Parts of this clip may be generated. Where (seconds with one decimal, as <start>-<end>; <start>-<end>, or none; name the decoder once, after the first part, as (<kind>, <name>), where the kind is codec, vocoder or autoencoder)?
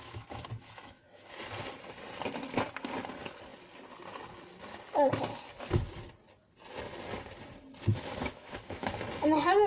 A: 0.0-1.3 (autoencoder, DAC-VAE); 7.9-8.9